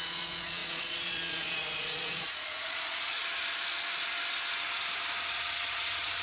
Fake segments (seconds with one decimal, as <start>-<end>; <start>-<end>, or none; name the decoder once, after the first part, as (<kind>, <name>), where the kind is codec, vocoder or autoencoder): 0.0-3.2 (vocoder, Vocos); 5.3-6.2